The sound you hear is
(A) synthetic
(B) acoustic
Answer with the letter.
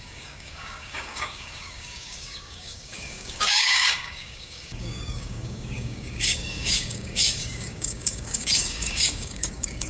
A